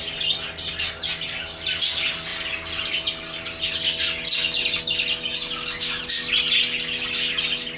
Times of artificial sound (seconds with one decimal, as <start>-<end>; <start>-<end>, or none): none